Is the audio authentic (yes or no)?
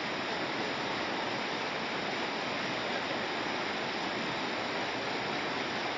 yes